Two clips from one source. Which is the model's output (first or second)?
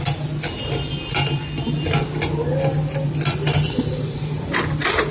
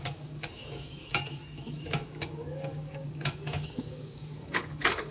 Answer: second